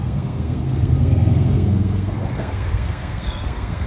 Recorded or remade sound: remade